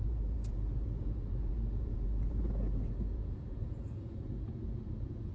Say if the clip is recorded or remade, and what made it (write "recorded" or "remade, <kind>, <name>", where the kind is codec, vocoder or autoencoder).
remade, vocoder, Vocos